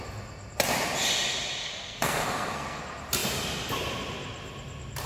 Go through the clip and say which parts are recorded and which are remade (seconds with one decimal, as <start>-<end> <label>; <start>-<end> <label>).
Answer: 0.0-1.6 recorded; 1.6-2.8 remade; 2.8-5.1 recorded